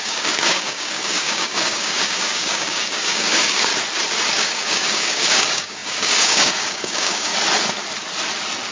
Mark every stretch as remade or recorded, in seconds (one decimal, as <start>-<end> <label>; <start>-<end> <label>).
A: 0.0-3.7 remade; 3.7-4.3 recorded; 4.3-7.3 remade; 7.3-8.7 recorded